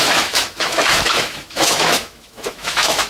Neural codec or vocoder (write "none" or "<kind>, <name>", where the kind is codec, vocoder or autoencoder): autoencoder, DAC-VAE